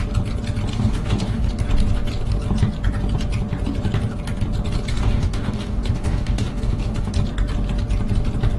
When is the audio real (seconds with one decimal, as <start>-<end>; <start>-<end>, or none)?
0.0-0.7; 1.5-4.9; 7.1-8.6